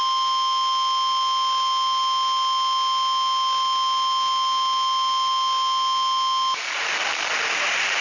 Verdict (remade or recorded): recorded